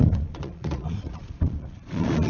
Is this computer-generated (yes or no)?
yes